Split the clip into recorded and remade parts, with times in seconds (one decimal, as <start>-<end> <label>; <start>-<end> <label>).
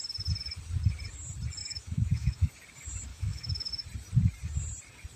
0.0-1.6 recorded; 1.6-2.5 remade; 2.5-3.1 recorded; 3.1-3.7 remade; 3.7-5.2 recorded